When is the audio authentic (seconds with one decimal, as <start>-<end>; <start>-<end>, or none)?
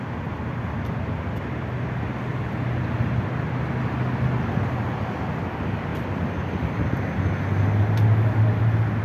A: 0.0-2.3; 3.1-9.0